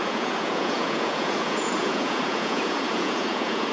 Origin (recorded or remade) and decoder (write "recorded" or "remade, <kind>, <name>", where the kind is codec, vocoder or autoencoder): remade, vocoder, Vocos